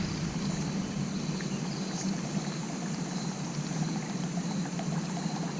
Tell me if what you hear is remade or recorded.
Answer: recorded